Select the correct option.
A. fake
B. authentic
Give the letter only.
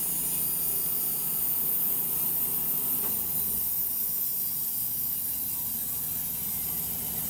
B